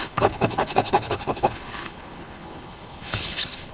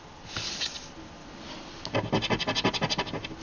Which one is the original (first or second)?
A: second